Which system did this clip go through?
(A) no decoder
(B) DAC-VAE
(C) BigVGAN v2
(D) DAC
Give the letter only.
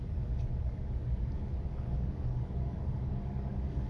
D